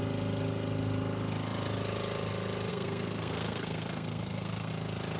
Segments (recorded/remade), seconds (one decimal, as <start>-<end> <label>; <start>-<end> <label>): 0.0-2.7 recorded; 2.7-4.7 remade; 4.7-5.2 recorded